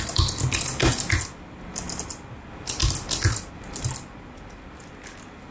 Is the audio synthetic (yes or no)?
no